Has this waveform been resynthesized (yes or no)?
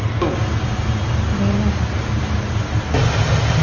no